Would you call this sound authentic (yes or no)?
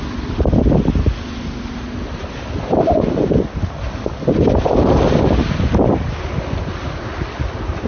yes